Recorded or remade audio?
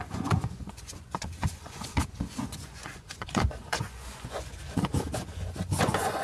remade